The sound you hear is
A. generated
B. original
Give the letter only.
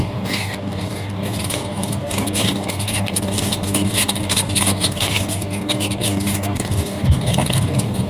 A